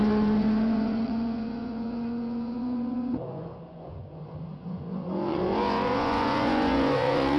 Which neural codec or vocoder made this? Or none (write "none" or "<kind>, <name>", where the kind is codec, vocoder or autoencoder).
vocoder, Vocos